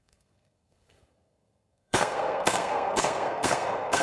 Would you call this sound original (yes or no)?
no